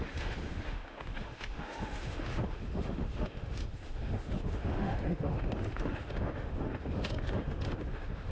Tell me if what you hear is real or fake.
fake